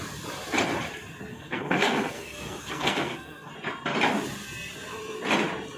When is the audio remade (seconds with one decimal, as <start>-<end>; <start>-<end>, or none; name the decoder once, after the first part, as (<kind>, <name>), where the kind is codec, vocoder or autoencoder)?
1.3-3.5 (codec, SNAC)

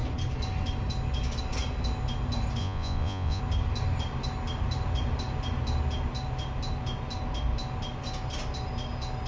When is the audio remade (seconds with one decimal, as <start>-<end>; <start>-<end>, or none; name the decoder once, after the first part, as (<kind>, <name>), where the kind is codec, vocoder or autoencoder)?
2.6-3.4 (vocoder, Vocos)

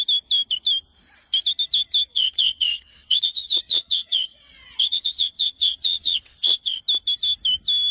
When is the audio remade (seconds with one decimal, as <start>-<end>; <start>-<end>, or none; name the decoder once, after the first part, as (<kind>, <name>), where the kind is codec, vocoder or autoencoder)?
2.1-6.8 (vocoder, WaveNeXt)

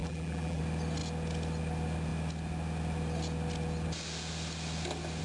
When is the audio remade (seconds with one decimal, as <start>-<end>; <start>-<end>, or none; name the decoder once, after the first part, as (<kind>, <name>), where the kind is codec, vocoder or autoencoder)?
0.0-0.6 (vocoder, BigVGAN v2)

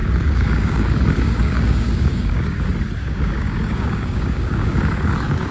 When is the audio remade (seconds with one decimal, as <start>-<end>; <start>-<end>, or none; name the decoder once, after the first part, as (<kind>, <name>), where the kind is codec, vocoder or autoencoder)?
0.0-2.6 (codec, DAC); 3.0-5.5

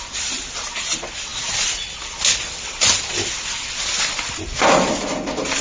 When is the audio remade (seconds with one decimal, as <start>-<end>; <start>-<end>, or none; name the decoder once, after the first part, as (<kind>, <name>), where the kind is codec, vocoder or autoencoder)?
none

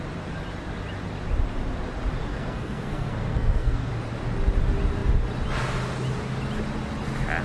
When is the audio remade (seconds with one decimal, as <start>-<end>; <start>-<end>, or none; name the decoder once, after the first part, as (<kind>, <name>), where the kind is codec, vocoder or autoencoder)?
2.3-3.9 (codec, SNAC)